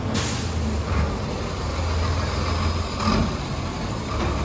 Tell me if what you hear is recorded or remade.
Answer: recorded